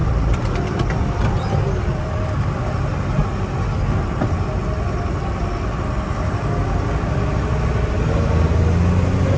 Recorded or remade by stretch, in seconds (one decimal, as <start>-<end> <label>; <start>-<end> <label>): 0.0-2.6 remade; 2.6-9.4 recorded